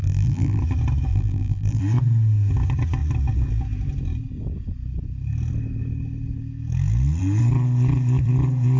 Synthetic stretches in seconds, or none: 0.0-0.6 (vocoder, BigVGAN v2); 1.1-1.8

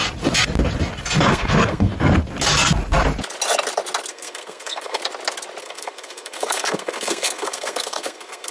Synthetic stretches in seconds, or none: 1.3-1.9 (codec, SNAC); 4.1-5.0; 5.6-8.5

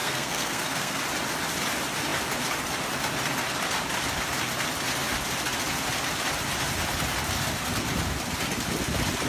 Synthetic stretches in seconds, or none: 0.0-1.0 (codec, SNAC)